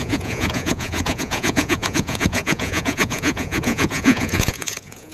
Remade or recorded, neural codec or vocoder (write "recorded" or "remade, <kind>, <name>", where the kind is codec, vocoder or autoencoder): remade, vocoder, Vocos